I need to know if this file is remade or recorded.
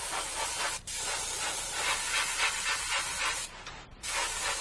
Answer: recorded